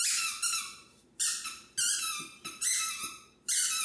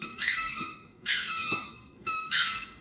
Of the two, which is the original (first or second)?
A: first